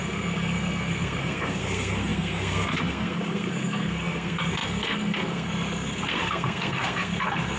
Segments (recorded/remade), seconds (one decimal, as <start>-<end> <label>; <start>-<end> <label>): 0.0-7.6 remade